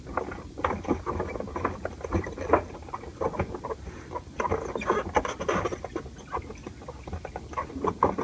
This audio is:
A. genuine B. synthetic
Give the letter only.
A